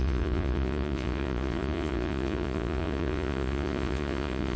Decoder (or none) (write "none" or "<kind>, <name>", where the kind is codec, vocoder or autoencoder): vocoder, Vocos